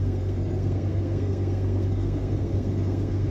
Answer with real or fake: fake